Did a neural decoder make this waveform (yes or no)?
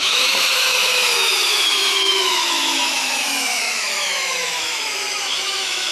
yes